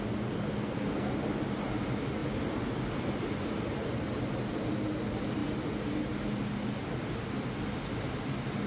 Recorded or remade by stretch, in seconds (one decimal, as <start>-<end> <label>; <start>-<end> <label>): 0.0-0.5 recorded; 0.5-1.1 remade; 1.1-8.7 recorded